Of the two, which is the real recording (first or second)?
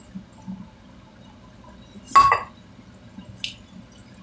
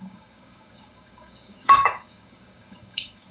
first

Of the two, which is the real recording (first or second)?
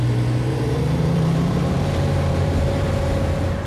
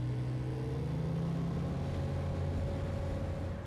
second